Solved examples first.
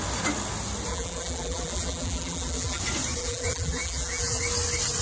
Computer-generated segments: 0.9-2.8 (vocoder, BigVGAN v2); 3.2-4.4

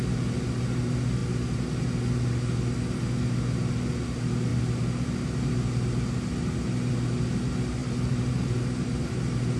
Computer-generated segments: 7.8-9.2 (vocoder, BigVGAN v2)